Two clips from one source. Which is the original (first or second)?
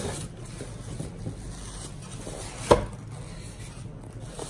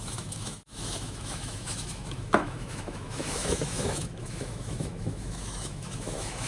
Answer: first